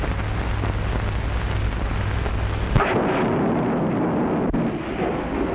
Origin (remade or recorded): recorded